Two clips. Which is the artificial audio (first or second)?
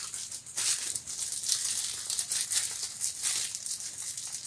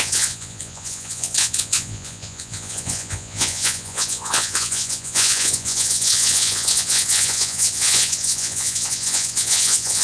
second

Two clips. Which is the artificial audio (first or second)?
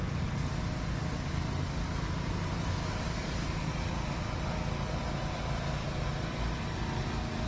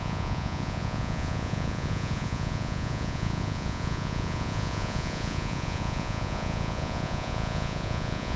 second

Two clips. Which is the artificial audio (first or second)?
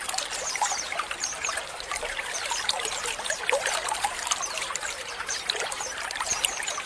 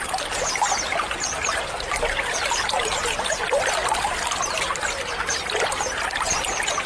first